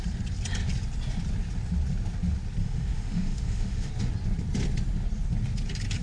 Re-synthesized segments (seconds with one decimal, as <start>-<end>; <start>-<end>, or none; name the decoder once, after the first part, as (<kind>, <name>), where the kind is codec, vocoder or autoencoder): 2.6-3.9 (autoencoder, DAC-VAE)